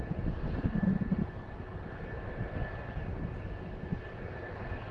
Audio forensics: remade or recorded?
recorded